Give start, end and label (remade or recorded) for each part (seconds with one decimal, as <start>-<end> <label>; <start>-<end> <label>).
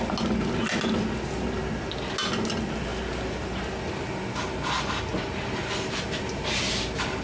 0.0-7.2 recorded